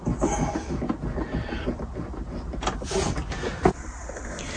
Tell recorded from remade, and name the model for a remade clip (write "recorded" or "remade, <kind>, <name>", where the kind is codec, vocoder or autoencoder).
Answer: recorded